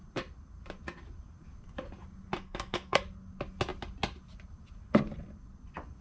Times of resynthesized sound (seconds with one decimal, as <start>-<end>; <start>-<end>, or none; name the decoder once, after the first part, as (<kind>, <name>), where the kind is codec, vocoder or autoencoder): 2.4-3.0 (codec, SNAC)